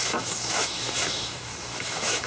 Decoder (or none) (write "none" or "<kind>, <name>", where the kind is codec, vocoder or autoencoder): autoencoder, DAC-VAE